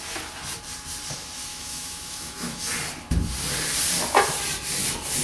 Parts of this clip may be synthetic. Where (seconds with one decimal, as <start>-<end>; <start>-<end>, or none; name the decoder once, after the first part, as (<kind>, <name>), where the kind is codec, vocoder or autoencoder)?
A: 1.5-2.6 (autoencoder, DAC-VAE)